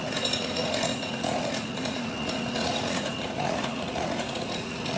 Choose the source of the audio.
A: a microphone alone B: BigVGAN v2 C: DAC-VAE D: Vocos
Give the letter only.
D